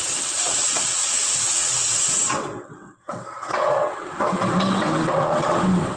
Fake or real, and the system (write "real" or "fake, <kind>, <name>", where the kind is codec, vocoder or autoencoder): fake, vocoder, WaveNeXt